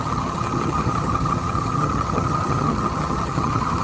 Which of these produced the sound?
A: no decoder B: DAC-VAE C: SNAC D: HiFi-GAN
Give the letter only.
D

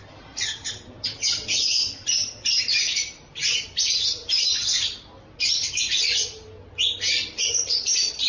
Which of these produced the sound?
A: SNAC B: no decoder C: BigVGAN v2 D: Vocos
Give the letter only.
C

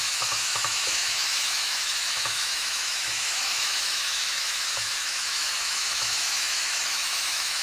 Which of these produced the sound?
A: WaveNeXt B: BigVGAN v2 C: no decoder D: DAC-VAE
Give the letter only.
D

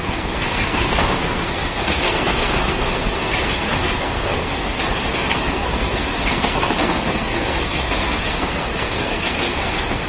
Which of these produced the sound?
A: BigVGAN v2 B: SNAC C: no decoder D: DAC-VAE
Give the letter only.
B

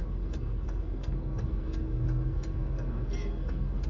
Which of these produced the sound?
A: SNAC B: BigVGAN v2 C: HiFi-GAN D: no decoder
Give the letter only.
A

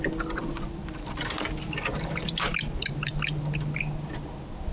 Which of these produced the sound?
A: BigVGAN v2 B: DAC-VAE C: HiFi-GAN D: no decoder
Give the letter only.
D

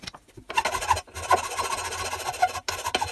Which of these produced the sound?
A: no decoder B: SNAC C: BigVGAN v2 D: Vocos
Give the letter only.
A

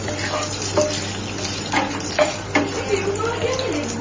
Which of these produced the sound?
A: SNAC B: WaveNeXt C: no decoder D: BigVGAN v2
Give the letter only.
C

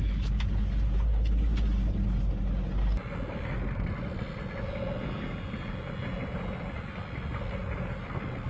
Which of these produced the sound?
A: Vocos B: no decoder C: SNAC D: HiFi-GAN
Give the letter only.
B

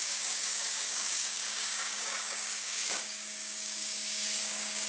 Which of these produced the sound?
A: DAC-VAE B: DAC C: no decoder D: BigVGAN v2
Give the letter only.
B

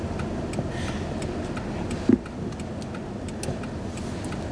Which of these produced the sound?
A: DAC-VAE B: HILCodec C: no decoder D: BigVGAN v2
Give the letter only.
C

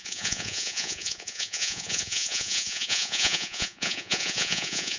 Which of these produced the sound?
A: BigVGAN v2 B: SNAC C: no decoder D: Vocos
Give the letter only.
D